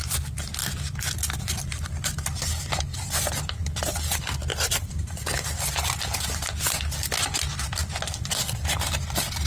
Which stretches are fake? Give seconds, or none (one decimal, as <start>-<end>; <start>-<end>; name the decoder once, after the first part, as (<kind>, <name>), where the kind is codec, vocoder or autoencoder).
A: 0.6-2.4 (vocoder, BigVGAN v2); 4.5-5.7; 7.8-8.5